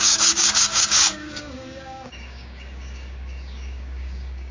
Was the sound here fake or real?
fake